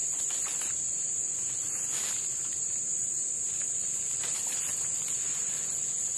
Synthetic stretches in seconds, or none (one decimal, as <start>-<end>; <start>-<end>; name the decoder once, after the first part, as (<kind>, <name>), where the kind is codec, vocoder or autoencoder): 0.0-0.7 (vocoder, BigVGAN v2)